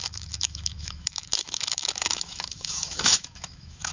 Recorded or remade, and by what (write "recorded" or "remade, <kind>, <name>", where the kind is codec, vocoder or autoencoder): remade, autoencoder, DAC-VAE